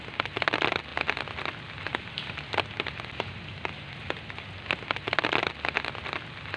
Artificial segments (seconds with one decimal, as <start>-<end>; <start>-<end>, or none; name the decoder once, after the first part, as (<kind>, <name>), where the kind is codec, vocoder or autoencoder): none